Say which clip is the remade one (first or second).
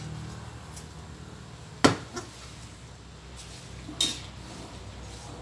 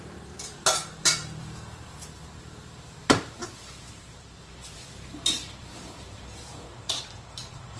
second